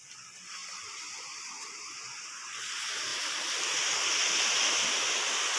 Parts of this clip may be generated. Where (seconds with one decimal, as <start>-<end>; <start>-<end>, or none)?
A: none